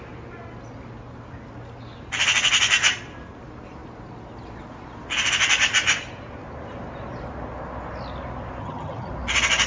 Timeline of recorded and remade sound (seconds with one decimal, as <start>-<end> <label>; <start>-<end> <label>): 0.0-8.6 recorded; 8.6-9.1 remade; 9.1-9.7 recorded